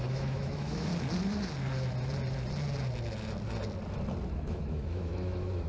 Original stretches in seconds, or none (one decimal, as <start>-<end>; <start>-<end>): 0.9-4.3